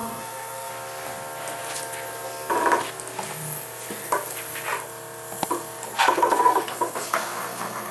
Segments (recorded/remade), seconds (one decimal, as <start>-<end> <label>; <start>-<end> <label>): 0.0-0.7 remade; 0.7-6.0 recorded; 6.0-7.9 remade

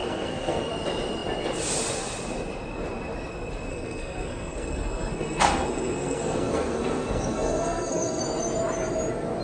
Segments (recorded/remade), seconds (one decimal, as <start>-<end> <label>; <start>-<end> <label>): 0.0-0.7 remade; 0.7-3.7 recorded; 3.7-8.2 remade; 8.2-9.4 recorded

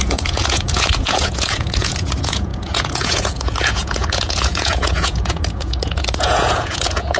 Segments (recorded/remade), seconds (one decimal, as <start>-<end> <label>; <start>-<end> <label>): 0.0-7.2 remade

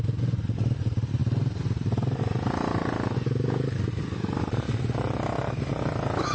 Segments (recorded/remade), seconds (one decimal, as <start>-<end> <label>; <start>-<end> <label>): 0.0-6.3 recorded

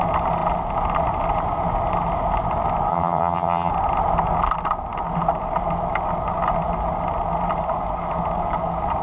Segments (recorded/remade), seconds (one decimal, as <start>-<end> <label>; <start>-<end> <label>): 0.0-2.9 recorded; 2.9-3.7 remade; 3.7-9.0 recorded